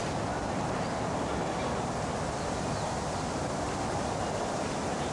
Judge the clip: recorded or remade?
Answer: recorded